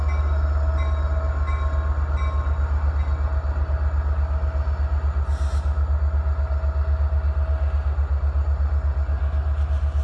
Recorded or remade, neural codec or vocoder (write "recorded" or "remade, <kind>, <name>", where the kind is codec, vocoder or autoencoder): recorded